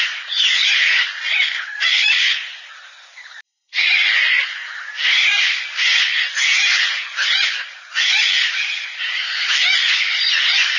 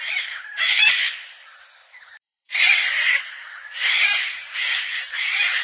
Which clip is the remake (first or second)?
second